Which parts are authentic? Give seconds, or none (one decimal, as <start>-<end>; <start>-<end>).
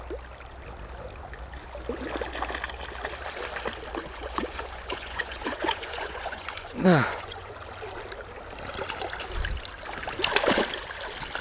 0.0-4.0; 7.5-11.4